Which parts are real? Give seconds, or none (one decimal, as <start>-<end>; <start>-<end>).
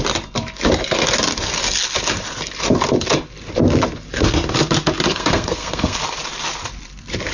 0.0-5.1; 6.0-7.3